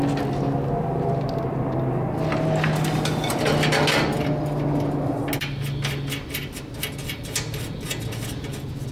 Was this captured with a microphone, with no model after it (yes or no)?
yes